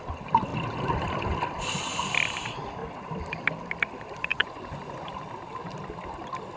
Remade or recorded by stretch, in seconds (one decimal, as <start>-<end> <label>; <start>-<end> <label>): 0.0-4.3 recorded; 4.3-5.1 remade; 5.1-6.6 recorded